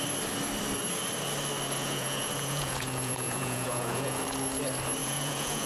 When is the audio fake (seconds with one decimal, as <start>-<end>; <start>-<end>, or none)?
1.8-4.2; 5.0-5.7